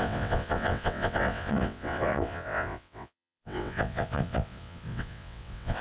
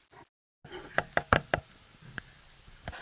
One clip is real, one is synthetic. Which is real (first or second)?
second